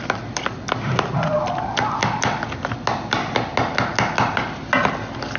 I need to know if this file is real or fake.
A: real